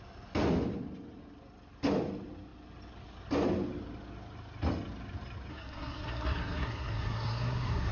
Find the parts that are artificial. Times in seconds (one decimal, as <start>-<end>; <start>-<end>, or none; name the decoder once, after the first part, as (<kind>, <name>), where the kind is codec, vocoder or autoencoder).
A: 5.5-7.9 (codec, SNAC)